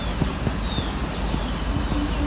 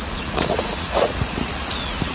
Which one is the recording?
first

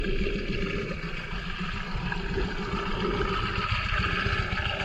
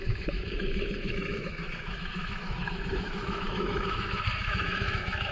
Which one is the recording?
first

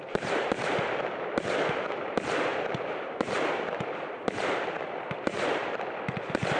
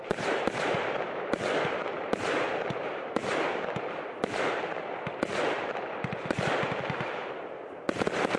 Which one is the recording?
second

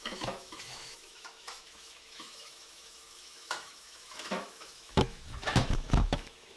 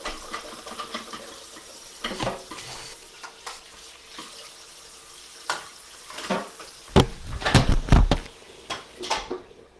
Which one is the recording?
second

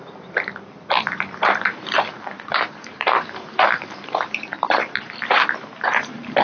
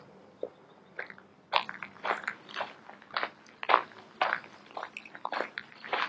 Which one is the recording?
second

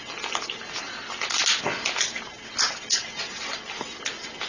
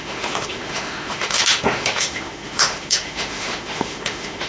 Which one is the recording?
first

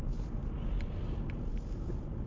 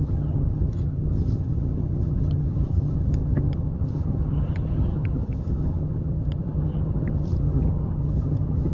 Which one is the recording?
first